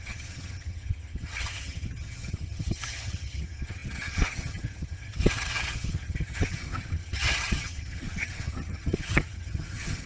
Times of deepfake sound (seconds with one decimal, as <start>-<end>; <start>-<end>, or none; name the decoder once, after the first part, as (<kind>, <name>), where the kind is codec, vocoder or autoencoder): 0.0-10.1 (vocoder, HiFi-GAN)